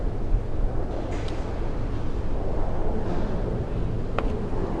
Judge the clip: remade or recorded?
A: recorded